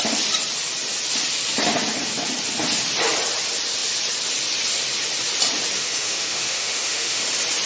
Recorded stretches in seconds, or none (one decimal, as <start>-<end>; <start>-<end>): 0.0-5.8; 7.2-7.7

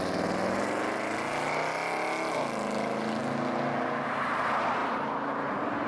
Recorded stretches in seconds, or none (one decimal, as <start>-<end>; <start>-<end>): 0.0-5.9

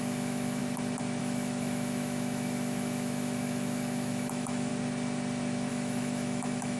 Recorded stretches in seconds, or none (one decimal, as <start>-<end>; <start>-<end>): 0.6-1.2; 4.7-5.7